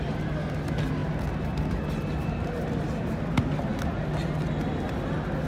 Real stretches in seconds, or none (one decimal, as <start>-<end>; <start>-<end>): 0.0-5.5